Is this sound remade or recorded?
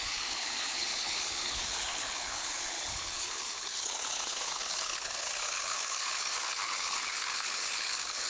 remade